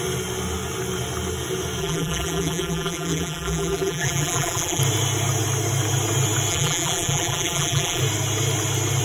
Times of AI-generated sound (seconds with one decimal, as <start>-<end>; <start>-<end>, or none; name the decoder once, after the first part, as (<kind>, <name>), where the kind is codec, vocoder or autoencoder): 1.8-4.8 (vocoder, BigVGAN v2); 6.5-8.0